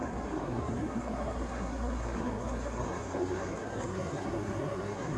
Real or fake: fake